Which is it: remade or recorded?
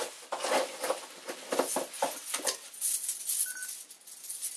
recorded